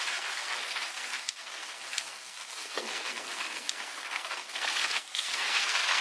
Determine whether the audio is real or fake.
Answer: fake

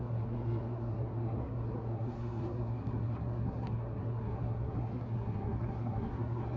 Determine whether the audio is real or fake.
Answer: fake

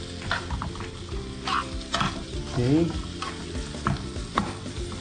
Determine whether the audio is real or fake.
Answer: real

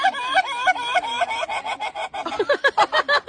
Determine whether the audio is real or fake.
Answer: real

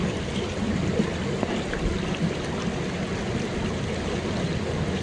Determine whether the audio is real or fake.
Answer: real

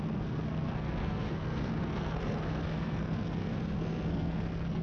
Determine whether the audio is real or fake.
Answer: fake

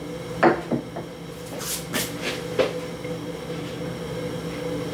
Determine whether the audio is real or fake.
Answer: real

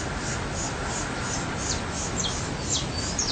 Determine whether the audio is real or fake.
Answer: real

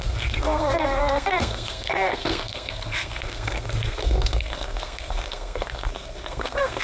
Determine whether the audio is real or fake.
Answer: fake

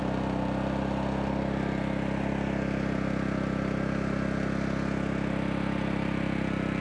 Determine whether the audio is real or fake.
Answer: real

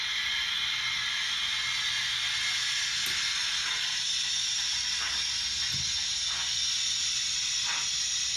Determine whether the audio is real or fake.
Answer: real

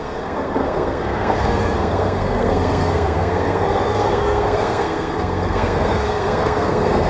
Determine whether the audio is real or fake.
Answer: fake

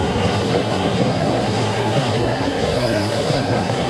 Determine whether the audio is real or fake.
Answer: fake